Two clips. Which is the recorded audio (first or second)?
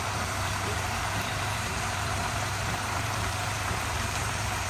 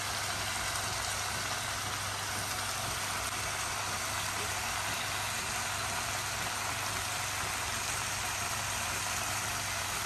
second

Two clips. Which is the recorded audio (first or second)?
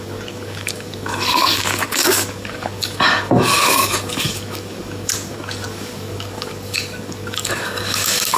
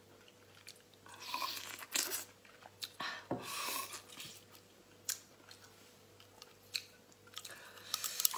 second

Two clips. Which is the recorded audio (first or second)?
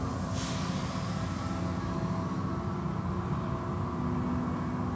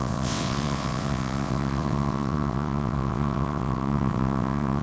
first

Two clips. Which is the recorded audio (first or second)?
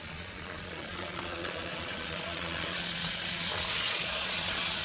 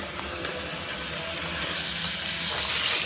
second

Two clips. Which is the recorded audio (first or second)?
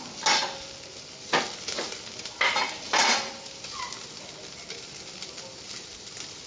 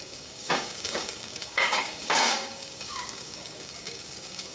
first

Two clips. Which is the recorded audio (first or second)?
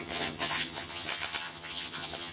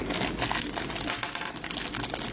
second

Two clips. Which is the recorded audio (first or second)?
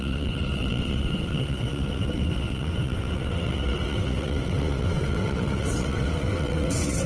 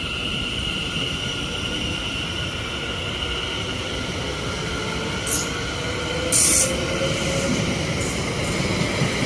second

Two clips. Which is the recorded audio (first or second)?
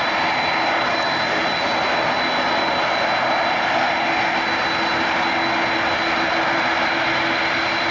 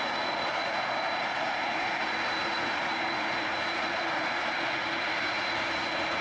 first